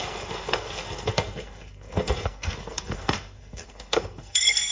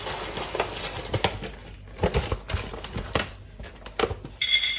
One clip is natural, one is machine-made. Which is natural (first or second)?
second